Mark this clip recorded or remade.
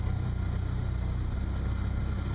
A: recorded